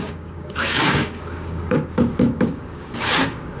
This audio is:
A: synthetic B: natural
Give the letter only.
A